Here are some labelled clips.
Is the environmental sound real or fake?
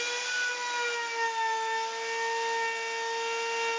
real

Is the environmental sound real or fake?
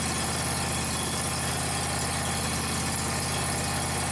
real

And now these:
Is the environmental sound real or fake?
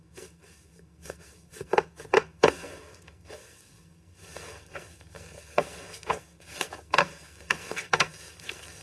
fake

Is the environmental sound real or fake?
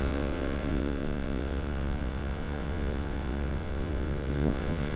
fake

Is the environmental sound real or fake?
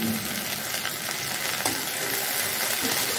real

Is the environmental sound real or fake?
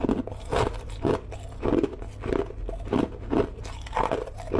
real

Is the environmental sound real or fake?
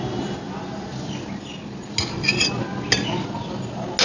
real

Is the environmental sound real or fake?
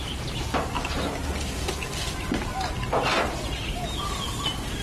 real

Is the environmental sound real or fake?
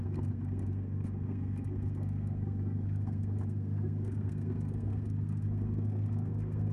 fake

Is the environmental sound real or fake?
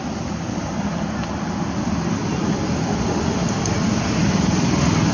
real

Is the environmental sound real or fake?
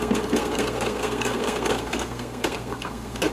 fake